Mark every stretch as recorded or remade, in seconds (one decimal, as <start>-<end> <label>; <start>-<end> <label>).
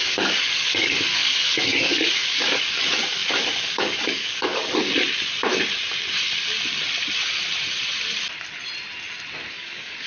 0.0-4.8 remade; 4.8-9.5 recorded; 9.5-10.1 remade